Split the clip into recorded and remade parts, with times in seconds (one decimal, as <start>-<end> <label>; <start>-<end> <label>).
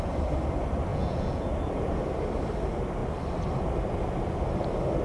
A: 0.0-0.9 recorded; 0.9-1.5 remade; 1.5-5.0 recorded